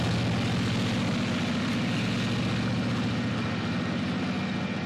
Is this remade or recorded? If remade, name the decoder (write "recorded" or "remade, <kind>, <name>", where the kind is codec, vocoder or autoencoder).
recorded